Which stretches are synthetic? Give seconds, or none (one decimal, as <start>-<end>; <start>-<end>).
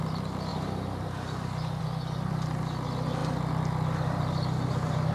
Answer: 0.5-1.8